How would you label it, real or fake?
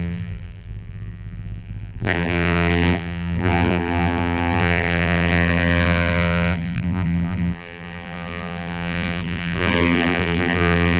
fake